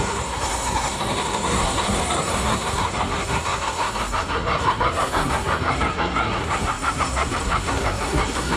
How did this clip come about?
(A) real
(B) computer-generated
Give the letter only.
B